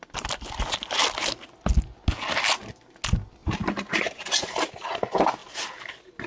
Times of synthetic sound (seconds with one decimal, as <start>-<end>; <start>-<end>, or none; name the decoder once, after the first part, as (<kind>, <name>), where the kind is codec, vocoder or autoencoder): 3.4-4.7 (vocoder, BigVGAN v2)